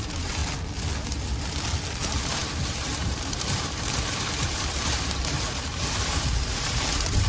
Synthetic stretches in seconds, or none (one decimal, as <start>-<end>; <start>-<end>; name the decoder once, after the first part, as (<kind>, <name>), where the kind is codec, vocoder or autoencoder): 0.0-0.4 (vocoder, BigVGAN v2); 2.0-7.3